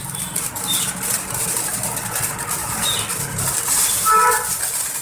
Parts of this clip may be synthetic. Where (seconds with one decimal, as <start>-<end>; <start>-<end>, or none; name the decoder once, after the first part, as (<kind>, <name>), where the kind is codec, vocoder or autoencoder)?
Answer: none